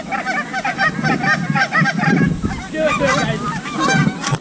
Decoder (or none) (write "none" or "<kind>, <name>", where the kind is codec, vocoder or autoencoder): none